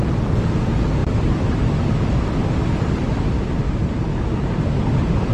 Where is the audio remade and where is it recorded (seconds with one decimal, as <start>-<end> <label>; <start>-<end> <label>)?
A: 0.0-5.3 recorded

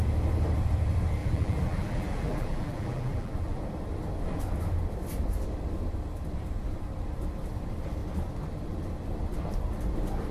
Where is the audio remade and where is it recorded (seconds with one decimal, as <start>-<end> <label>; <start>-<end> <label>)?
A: 0.0-1.2 recorded; 1.2-3.6 remade; 3.6-10.3 recorded

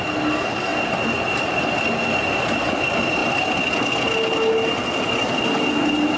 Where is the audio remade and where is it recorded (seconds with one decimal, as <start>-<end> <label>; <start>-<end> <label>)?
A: 0.0-6.2 recorded

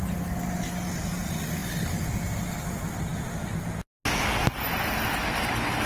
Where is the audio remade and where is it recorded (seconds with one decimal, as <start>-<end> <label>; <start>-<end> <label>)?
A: 0.0-5.9 recorded

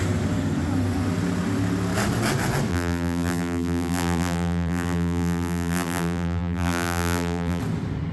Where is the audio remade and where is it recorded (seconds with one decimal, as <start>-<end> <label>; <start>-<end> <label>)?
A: 0.0-2.7 recorded; 2.7-7.6 remade; 7.6-8.1 recorded

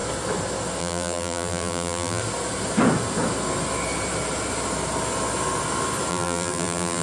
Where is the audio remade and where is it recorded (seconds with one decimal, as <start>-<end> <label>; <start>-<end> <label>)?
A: 0.0-0.8 recorded; 0.8-2.2 remade; 2.2-6.1 recorded; 6.1-7.0 remade

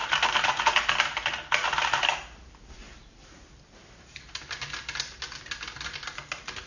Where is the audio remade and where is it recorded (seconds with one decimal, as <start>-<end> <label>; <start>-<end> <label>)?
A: 0.0-0.6 remade; 0.6-1.8 recorded; 1.8-4.4 remade; 4.4-6.7 recorded

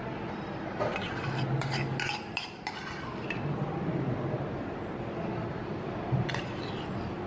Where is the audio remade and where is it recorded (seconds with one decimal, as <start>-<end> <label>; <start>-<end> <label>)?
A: 0.0-7.3 recorded